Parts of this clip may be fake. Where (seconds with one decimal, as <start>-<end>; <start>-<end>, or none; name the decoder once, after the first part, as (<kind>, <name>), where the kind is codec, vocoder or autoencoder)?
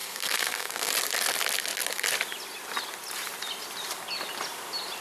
0.0-0.9 (codec, SNAC)